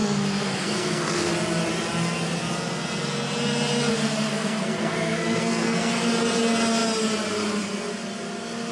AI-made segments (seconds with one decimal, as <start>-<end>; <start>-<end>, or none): 0.0-1.3; 4.3-5.9